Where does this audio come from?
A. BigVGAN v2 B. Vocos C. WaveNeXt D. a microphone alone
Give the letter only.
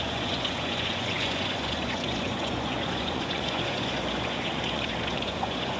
B